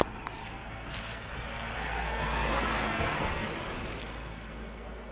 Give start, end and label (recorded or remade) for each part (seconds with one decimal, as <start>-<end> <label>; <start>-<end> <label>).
0.0-0.4 recorded; 0.4-3.5 remade; 3.5-4.0 recorded; 4.0-5.1 remade